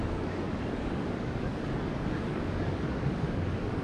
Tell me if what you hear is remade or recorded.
remade